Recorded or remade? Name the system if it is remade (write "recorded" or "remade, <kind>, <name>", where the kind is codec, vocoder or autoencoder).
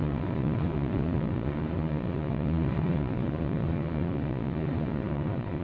remade, vocoder, Vocos